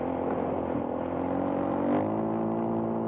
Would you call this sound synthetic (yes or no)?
yes